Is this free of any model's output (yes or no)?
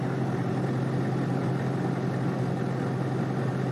yes